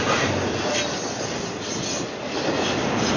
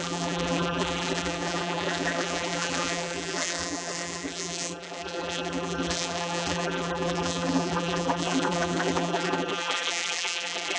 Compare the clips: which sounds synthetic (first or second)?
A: second